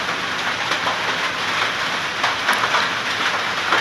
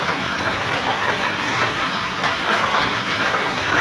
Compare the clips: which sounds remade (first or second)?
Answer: second